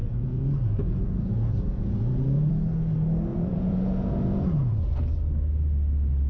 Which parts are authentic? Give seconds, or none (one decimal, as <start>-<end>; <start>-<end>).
2.5-3.3; 4.8-6.3